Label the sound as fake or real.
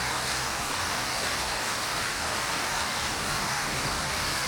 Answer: fake